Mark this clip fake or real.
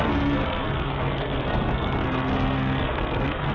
fake